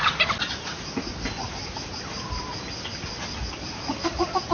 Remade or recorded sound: recorded